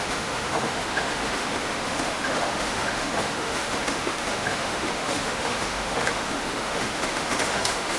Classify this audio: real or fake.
fake